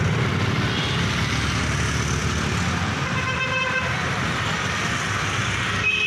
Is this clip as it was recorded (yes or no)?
yes